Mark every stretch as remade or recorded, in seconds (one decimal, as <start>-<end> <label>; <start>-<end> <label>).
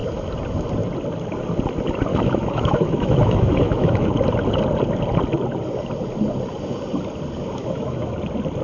0.0-2.1 recorded; 2.1-4.1 remade; 4.1-7.6 recorded; 7.6-8.1 remade; 8.1-8.6 recorded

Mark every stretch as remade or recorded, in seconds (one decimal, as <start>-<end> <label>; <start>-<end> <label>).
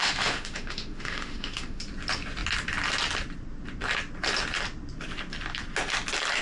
0.0-1.8 remade; 1.8-6.4 recorded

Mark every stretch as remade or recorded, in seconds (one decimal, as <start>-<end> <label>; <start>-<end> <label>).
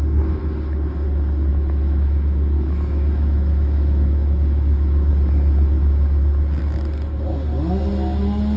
0.0-1.5 recorded; 1.5-5.1 remade; 5.1-8.6 recorded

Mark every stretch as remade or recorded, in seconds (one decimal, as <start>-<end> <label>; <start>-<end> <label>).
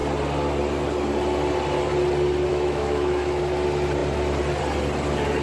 0.0-2.5 recorded; 2.5-3.4 remade; 3.4-5.4 recorded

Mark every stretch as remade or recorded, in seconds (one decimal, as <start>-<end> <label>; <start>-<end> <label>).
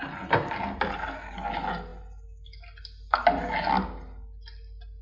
0.0-5.0 recorded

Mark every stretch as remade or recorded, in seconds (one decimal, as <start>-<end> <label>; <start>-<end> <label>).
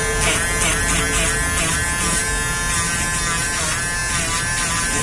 0.0-5.0 recorded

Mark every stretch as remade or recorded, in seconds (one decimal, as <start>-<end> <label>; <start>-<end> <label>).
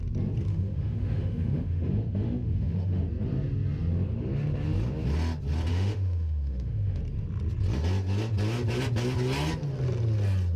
0.0-0.5 recorded; 0.5-3.0 remade; 3.0-5.7 recorded; 5.7-7.0 remade; 7.0-10.6 recorded